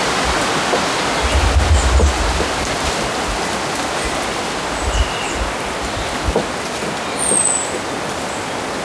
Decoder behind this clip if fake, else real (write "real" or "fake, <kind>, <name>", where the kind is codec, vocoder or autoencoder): real